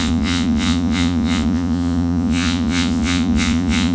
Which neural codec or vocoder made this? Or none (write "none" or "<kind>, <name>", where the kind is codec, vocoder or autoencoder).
vocoder, Vocos